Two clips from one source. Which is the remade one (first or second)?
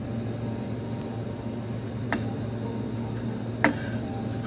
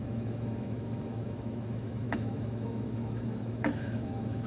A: second